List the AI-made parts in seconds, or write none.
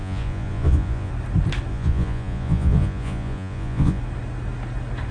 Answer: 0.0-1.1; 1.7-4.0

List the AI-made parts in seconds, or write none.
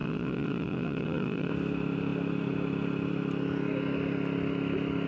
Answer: 0.0-1.5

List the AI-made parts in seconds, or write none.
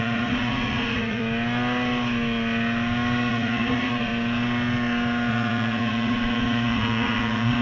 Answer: 0.0-1.2; 3.3-4.1; 5.3-7.6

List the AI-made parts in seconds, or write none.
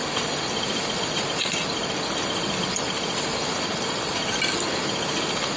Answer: none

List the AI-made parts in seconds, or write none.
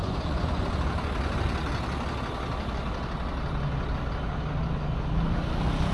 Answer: 0.0-0.7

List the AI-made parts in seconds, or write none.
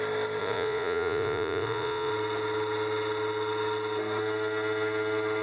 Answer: 0.4-2.1